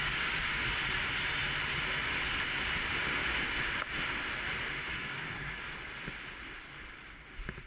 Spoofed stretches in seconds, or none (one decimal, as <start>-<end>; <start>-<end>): 0.0-0.6; 4.9-5.6